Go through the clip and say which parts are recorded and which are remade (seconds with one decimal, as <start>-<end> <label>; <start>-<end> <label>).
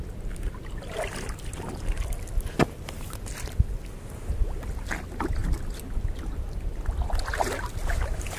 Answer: 0.0-8.4 recorded